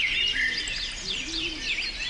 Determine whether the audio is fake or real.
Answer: real